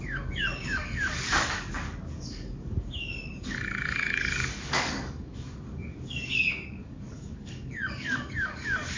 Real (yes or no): no